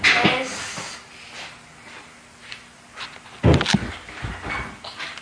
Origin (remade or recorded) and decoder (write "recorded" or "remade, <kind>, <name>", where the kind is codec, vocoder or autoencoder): recorded